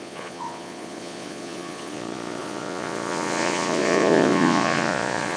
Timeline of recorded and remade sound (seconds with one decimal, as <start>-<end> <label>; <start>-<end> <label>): 0.0-5.4 remade